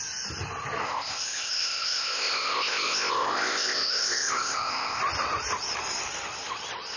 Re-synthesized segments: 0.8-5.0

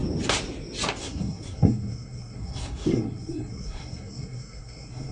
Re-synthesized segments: 1.0-5.1

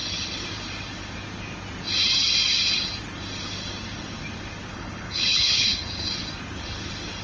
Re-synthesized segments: 4.7-6.1

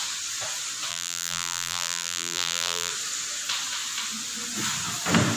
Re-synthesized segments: 0.9-2.9

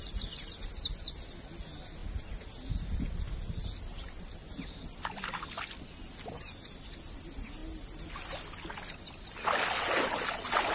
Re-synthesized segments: none

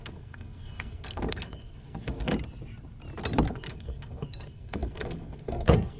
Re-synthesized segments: 0.0-2.3; 3.5-6.0

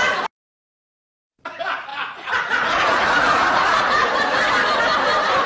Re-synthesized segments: 1.9-4.4